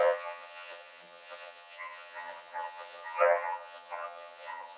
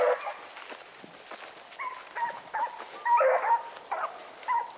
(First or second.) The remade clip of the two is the first